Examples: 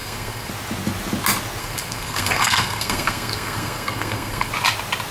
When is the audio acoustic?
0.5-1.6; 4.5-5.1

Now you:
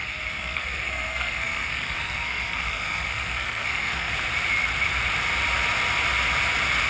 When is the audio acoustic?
4.1-6.9

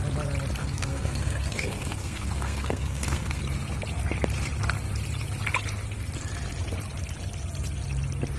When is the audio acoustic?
0.0-0.6; 3.4-8.4

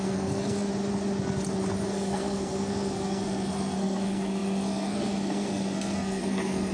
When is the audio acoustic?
0.7-1.9

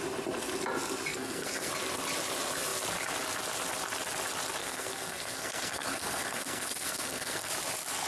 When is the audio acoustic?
0.0-1.1; 1.7-4.6; 7.5-8.1

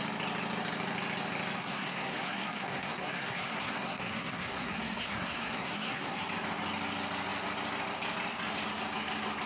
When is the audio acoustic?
0.0-1.6; 6.2-9.5